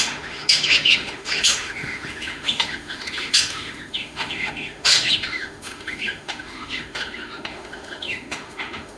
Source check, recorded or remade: remade